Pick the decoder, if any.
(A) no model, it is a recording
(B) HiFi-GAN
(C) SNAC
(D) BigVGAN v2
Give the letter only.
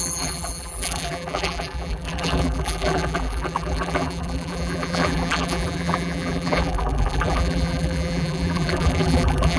D